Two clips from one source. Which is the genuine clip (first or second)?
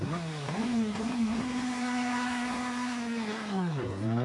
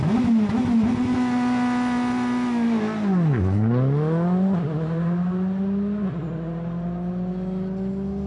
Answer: second